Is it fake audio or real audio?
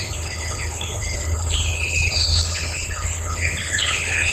fake